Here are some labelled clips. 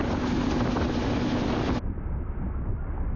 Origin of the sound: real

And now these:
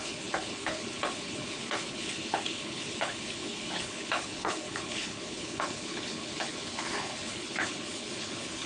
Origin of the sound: fake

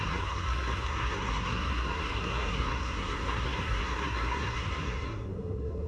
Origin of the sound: fake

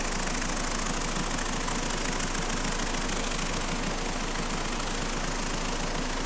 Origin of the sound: real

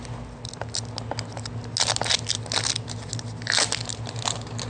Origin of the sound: real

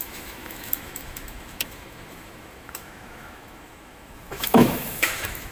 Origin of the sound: fake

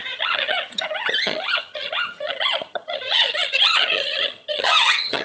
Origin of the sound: fake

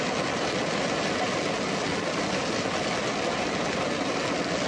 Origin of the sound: real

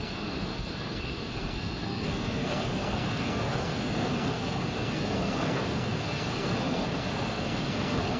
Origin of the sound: fake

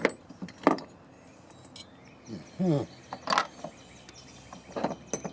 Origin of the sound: real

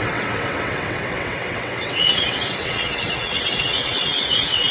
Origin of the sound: fake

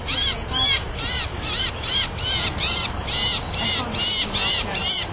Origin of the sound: real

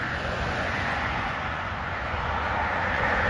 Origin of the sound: fake